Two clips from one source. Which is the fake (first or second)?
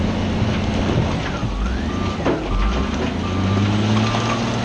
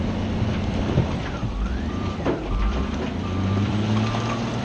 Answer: second